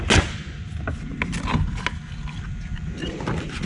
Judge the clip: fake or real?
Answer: real